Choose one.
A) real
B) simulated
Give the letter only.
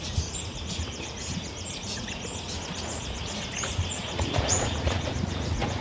B